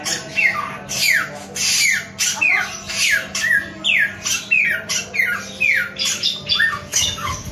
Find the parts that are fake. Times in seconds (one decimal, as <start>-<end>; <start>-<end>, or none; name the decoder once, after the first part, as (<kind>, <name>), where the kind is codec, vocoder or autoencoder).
6.9-7.5 (codec, DAC)